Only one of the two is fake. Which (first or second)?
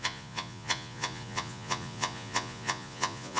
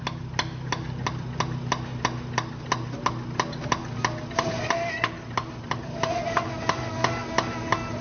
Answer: first